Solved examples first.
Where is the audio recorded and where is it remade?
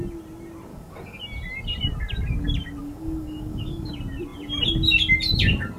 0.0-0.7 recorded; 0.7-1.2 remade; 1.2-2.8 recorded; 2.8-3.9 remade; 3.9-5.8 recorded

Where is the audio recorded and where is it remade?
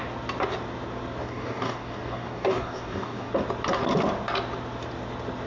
0.0-1.2 recorded; 1.2-3.3 remade; 3.3-5.5 recorded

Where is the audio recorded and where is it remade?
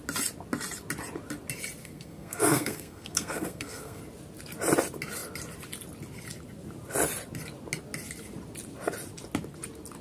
0.0-1.8 recorded; 1.8-4.0 remade; 4.0-10.0 recorded